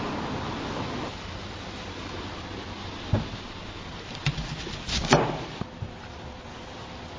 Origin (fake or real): real